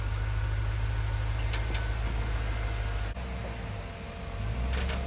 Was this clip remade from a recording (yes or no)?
no